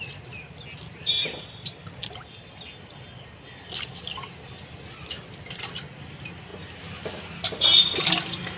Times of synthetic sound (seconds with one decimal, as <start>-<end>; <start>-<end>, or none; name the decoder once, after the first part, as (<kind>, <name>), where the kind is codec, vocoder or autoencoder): none